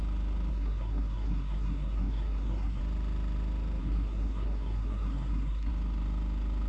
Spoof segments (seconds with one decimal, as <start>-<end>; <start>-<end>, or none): 0.5-2.8; 3.8-5.7